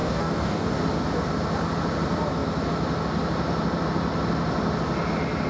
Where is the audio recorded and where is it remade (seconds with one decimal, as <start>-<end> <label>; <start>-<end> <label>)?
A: 0.0-0.8 remade; 0.8-5.5 recorded